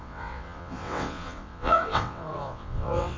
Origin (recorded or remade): remade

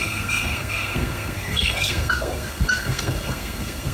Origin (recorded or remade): remade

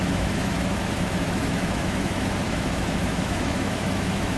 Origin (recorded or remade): remade